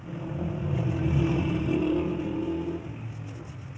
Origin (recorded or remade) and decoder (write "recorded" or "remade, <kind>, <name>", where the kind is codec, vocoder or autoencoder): recorded